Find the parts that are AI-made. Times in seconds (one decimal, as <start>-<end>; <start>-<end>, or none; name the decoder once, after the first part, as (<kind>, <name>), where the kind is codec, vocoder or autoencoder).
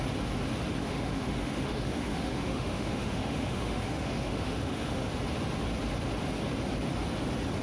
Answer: 0.8-5.1 (autoencoder, DAC-VAE)